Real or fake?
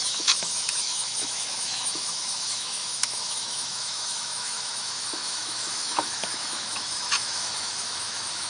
fake